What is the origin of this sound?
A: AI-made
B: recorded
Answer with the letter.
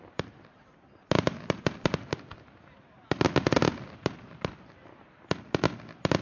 B